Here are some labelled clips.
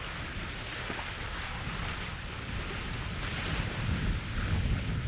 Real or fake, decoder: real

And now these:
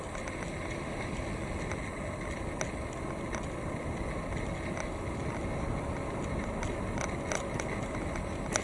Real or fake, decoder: real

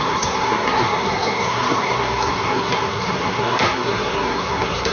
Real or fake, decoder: fake, codec, SNAC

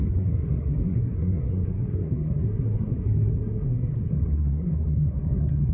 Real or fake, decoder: fake, codec, SNAC